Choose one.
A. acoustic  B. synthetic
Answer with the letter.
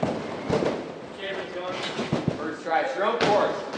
B